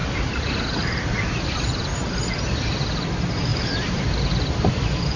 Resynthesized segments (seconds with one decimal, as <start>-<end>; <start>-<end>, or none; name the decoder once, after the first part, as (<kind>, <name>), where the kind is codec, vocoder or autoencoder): 3.5-4.7 (vocoder, BigVGAN v2)